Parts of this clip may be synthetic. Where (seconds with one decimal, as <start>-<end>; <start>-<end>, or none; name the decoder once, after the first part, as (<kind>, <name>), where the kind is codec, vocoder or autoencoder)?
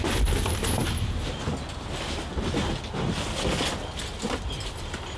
none